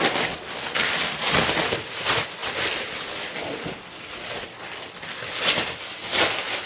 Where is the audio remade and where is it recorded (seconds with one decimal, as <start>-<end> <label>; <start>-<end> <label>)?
0.0-6.7 recorded